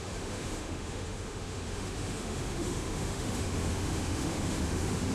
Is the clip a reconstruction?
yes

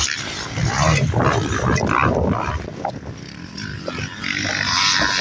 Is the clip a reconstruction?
no